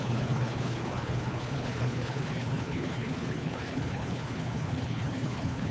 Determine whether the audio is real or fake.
fake